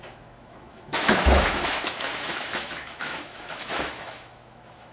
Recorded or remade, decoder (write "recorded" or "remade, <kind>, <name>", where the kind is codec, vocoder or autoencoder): remade, autoencoder, DAC-VAE